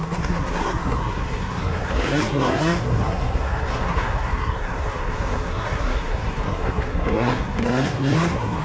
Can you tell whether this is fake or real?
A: fake